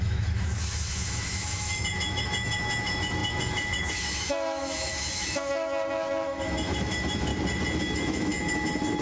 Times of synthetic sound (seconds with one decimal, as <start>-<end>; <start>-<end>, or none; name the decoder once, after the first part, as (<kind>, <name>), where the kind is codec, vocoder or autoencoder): 0.0-7.3 (autoencoder, DAC-VAE); 7.8-9.0